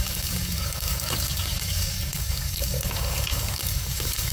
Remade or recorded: remade